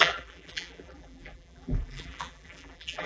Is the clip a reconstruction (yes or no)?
yes